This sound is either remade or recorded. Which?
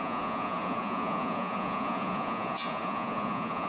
remade